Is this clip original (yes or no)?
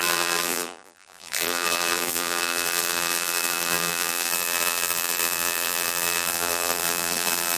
no